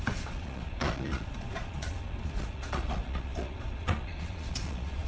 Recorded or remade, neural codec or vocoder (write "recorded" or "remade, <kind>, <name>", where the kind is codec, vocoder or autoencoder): remade, vocoder, Vocos